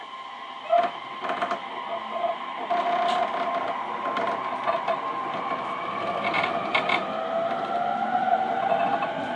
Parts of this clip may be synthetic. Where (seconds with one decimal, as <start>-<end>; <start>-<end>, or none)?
none